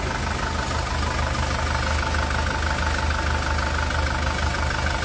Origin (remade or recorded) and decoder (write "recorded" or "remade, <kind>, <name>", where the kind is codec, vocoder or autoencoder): recorded